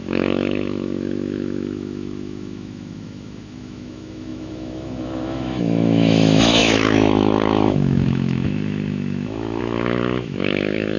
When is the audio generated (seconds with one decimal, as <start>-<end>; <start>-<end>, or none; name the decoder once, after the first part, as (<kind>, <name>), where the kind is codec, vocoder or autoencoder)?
0.0-11.0 (autoencoder, DAC-VAE)